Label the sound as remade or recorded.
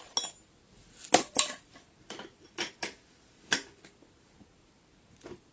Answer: recorded